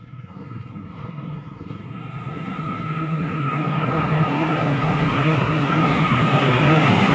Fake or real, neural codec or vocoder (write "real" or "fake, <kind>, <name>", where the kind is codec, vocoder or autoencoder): fake, codec, SNAC